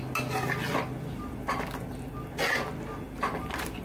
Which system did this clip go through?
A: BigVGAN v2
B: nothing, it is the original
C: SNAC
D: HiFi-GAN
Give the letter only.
B